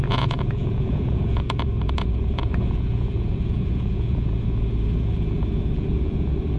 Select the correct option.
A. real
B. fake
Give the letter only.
B